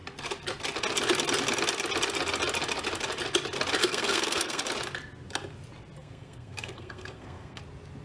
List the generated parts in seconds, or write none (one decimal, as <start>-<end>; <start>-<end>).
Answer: 3.8-4.6; 6.0-7.6